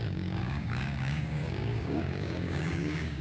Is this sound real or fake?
fake